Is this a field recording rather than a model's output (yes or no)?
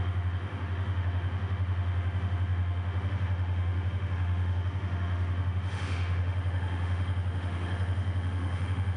no